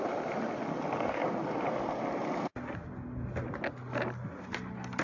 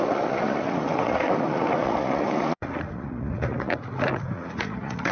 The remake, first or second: second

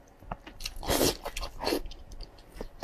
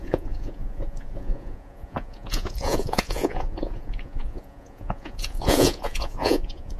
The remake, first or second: second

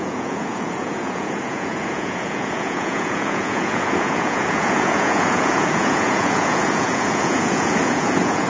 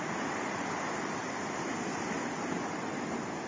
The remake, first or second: first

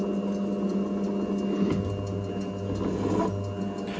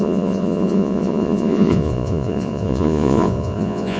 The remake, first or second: second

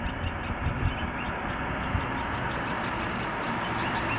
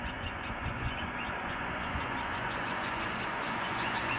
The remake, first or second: second